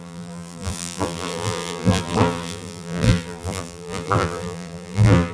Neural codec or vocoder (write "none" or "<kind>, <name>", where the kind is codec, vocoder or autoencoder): vocoder, BigVGAN v2